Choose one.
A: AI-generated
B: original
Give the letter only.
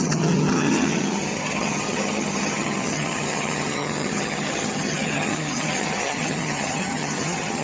A